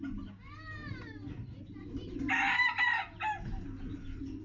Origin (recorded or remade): recorded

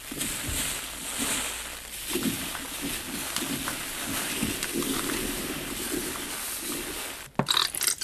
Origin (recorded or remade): recorded